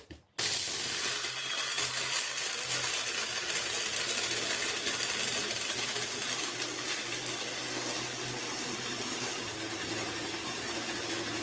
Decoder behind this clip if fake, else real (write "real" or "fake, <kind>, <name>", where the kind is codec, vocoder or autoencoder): real